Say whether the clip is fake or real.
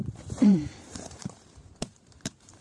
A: fake